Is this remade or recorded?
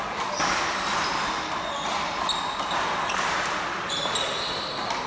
recorded